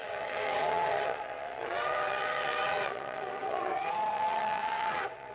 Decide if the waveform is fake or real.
fake